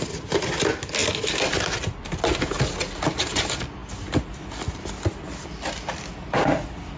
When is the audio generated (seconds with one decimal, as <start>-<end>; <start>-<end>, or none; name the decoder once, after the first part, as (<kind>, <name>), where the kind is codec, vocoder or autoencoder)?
none